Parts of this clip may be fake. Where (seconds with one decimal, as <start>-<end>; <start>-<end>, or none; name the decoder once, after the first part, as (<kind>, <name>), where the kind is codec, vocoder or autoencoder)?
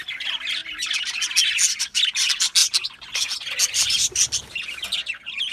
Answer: none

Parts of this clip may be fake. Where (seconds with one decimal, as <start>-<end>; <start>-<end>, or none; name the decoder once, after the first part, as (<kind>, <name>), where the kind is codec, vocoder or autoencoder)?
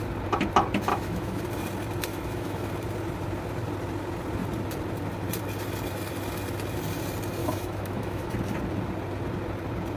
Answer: 0.9-1.4 (autoencoder, DAC-VAE); 2.1-2.7; 7.4-8.3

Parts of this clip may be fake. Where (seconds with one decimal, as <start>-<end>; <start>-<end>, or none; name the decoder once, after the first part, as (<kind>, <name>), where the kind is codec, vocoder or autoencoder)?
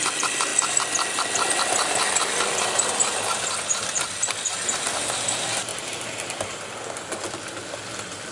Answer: 0.0-0.5 (vocoder, BigVGAN v2); 4.4-5.7; 7.3-8.3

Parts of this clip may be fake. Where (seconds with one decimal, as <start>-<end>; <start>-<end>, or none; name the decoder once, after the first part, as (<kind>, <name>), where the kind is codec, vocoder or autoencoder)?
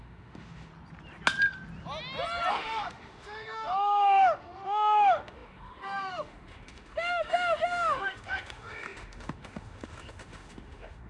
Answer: 0.0-0.7 (autoencoder, DAC-VAE); 2.5-11.1